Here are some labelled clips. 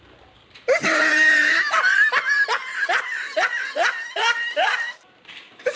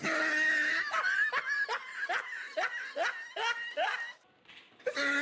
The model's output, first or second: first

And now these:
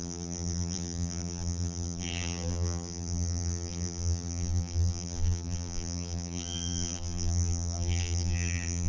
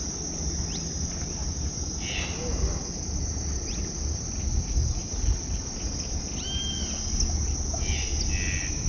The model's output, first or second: first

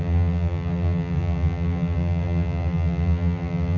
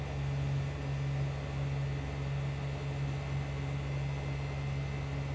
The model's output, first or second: first